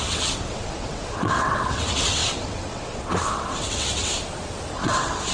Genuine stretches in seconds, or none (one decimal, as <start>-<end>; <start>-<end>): 4.1-4.7